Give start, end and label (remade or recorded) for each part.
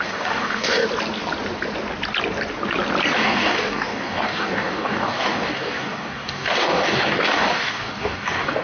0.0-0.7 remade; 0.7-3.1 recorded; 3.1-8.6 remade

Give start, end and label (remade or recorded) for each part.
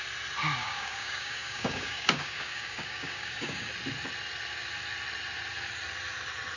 0.0-0.6 recorded; 0.6-3.7 remade; 3.7-6.6 recorded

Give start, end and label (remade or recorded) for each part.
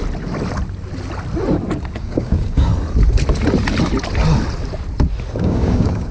0.0-2.0 recorded; 2.0-2.7 remade; 2.7-5.4 recorded; 5.4-6.1 remade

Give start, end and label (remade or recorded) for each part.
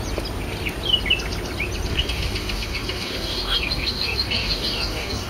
0.0-1.9 recorded; 1.9-5.3 remade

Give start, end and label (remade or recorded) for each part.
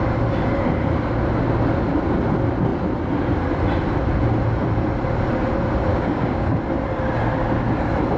0.0-5.9 recorded; 5.9-6.5 remade; 6.5-8.2 recorded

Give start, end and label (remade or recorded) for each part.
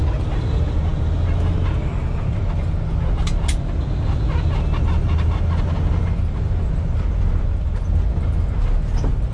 0.0-9.3 recorded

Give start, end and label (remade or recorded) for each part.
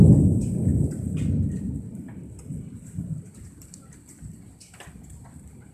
0.0-5.7 recorded